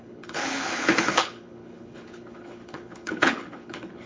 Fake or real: fake